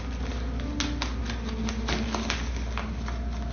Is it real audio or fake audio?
real